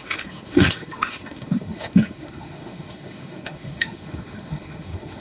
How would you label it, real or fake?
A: fake